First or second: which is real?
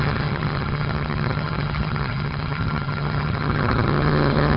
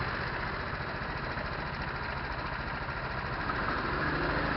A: second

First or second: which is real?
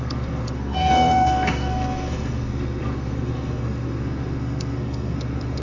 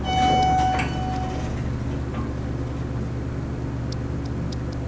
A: second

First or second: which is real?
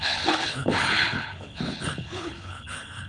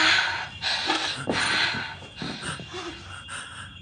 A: second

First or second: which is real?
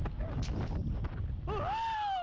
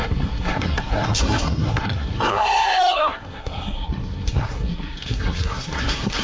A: first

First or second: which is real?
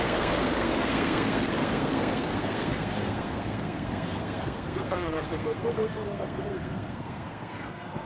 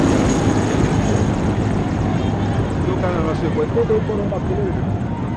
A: second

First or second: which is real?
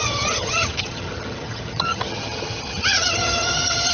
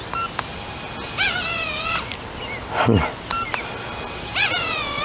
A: second